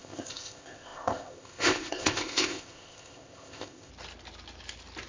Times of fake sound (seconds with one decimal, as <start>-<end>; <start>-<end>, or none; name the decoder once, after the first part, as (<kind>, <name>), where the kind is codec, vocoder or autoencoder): 0.0-3.9 (codec, ZipCodec)